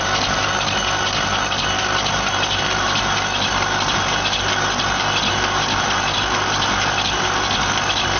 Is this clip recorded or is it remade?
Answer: recorded